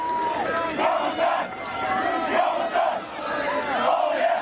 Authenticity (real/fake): real